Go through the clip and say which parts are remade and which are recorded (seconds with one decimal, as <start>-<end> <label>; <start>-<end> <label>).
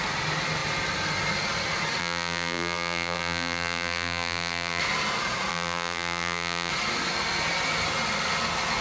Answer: 0.0-2.0 recorded; 2.0-4.8 remade; 4.8-5.5 recorded; 5.5-6.7 remade; 6.7-8.8 recorded